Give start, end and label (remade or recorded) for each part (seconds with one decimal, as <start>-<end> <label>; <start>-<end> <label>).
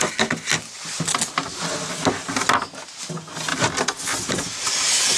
0.0-5.2 recorded